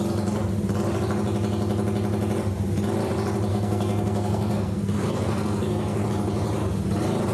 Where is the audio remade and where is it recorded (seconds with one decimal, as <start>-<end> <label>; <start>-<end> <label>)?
0.0-3.5 recorded; 3.5-6.1 remade; 6.1-7.3 recorded